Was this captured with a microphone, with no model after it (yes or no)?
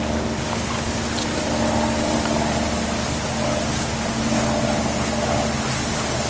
yes